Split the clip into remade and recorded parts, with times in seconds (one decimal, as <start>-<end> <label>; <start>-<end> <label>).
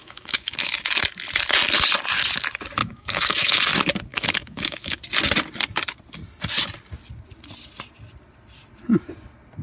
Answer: 0.0-0.7 remade; 0.7-2.8 recorded; 2.8-3.6 remade; 3.6-4.1 recorded; 4.1-5.0 remade; 5.0-9.6 recorded